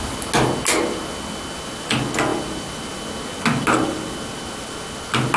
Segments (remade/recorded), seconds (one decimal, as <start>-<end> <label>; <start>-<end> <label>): 0.0-5.4 recorded